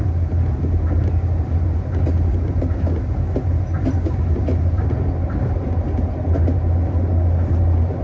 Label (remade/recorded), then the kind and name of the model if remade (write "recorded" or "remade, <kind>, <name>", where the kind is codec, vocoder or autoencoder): recorded